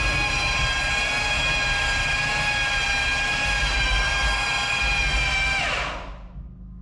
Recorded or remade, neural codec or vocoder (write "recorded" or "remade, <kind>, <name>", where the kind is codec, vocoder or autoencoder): recorded